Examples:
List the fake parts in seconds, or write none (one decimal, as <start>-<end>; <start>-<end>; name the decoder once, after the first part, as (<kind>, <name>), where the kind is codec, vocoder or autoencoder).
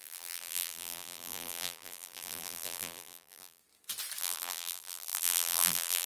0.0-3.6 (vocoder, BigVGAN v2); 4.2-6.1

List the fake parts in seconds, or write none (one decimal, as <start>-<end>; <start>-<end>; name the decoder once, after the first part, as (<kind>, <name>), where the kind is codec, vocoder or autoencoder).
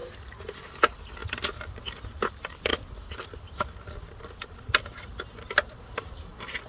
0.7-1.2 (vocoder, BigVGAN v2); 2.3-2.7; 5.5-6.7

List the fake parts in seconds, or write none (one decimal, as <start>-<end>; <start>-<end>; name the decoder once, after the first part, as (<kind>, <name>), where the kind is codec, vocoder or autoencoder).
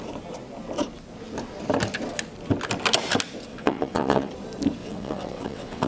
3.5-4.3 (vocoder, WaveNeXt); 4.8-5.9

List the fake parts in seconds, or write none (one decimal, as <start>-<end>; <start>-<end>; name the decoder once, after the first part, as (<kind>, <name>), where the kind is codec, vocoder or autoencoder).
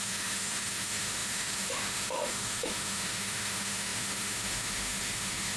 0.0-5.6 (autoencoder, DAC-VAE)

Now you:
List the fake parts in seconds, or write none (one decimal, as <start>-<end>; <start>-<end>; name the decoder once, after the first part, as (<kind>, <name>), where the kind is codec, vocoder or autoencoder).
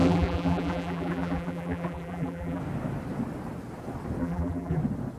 0.0-2.6 (vocoder, BigVGAN v2); 4.2-4.8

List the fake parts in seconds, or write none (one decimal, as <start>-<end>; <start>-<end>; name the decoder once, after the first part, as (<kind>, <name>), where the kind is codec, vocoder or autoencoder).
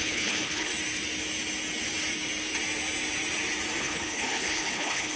0.0-0.7 (codec, HILCodec); 3.8-5.2